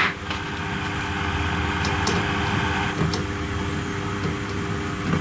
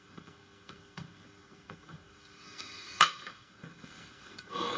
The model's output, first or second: second